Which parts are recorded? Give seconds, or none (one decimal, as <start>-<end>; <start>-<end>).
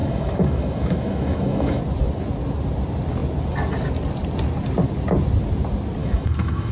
1.8-6.0